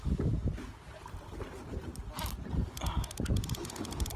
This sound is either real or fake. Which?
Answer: real